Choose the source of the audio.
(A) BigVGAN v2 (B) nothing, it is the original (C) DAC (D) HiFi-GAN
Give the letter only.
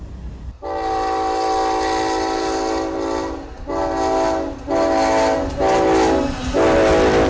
B